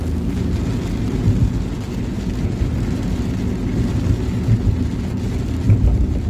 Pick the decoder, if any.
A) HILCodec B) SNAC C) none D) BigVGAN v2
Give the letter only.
C